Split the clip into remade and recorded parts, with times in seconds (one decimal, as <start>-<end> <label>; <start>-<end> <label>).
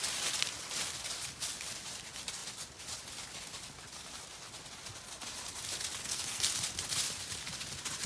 0.0-6.0 recorded; 6.0-6.5 remade; 6.5-8.1 recorded